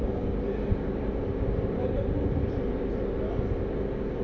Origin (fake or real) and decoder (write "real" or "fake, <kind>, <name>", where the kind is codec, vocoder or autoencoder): real